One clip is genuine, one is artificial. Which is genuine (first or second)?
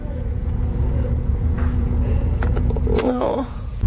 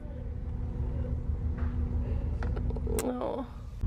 second